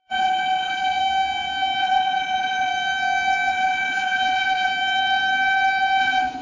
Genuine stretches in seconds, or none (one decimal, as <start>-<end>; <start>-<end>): 1.0-1.8; 2.7-3.5; 4.7-6.0